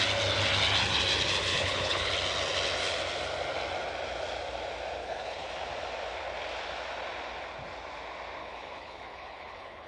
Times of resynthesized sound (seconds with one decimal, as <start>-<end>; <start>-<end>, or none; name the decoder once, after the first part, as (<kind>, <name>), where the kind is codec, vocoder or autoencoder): 1.5-2.1 (codec, HILCodec); 5.0-5.5; 8.4-9.9